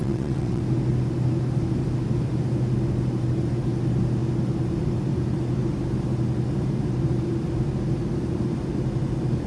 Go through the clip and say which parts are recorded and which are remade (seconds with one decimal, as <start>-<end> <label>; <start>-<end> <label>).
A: 0.0-0.6 remade; 0.6-9.5 recorded